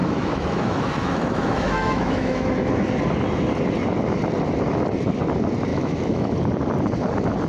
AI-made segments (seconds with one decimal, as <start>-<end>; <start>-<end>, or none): 0.0-2.7; 5.7-6.3